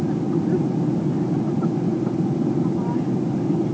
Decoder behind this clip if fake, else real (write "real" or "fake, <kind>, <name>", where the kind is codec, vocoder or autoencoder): real